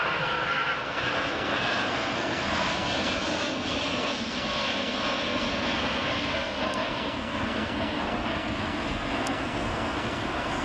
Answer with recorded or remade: remade